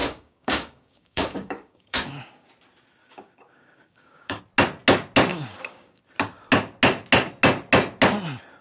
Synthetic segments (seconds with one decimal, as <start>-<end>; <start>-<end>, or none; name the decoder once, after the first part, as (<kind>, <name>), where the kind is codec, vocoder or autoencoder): 0.0-2.5 (codec, DAC); 3.0-4.4; 5.3-6.0

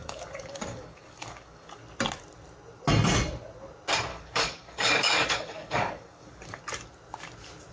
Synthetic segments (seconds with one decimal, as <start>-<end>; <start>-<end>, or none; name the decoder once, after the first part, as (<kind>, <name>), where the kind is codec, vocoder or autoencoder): 0.0-1.8 (codec, DAC); 4.1-6.6

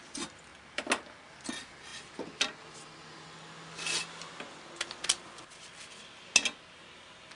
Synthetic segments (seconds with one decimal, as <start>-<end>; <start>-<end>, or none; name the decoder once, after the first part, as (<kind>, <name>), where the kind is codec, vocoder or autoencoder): none

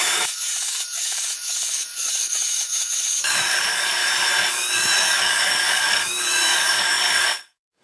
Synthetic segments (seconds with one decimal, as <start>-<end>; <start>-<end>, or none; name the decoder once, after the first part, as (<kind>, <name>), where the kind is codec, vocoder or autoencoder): 0.0-4.0 (codec, DAC); 4.5-7.8

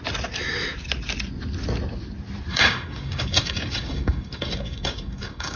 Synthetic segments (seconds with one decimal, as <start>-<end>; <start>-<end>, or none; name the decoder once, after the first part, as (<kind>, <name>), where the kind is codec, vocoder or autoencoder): 2.5-5.6 (codec, DAC)

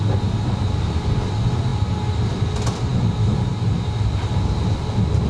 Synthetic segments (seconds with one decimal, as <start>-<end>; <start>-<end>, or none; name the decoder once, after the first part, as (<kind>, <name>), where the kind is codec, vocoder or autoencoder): none